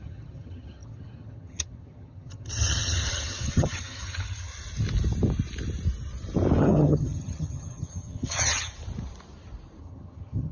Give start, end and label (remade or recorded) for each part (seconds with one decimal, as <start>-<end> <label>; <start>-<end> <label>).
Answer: 0.0-4.5 remade; 4.5-6.6 recorded; 6.6-8.7 remade; 8.7-9.8 recorded; 9.8-10.5 remade